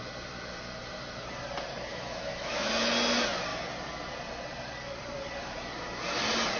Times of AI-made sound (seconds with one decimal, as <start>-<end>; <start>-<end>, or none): 1.9-2.7